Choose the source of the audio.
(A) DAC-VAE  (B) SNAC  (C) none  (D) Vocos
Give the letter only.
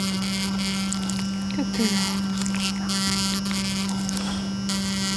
C